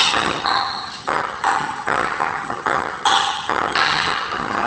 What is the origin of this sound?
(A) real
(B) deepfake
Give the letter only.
B